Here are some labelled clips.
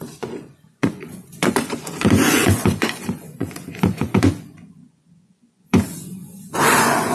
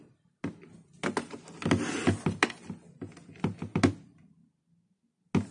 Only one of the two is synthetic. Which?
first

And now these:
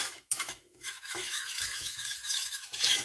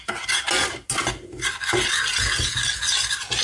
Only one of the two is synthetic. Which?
first